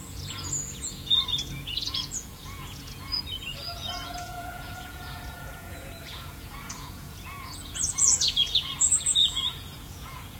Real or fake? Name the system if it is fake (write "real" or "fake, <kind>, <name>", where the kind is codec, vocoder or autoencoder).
fake, vocoder, Vocos